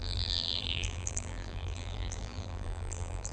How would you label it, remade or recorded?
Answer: remade